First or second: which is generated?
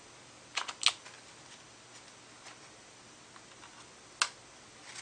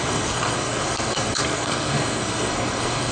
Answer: second